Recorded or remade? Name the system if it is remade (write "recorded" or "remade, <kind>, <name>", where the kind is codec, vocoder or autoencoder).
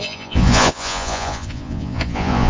remade, vocoder, Vocos